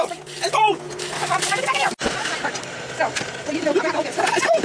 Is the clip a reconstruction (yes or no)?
no